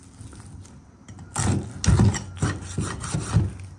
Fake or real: real